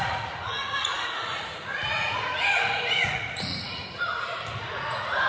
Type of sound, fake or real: fake